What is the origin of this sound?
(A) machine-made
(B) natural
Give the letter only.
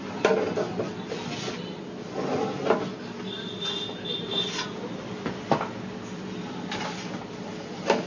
B